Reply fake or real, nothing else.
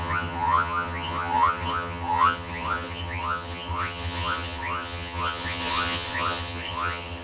fake